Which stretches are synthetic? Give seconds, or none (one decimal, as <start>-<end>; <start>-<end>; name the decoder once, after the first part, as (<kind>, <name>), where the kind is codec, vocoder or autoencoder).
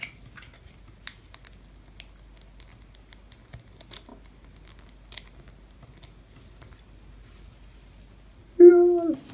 none